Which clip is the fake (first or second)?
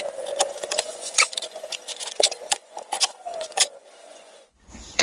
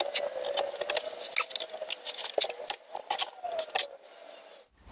first